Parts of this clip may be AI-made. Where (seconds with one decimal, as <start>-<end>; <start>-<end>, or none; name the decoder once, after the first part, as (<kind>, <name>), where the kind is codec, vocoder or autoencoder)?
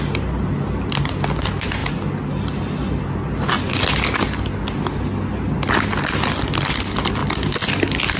none